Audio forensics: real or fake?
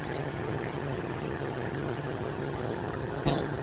fake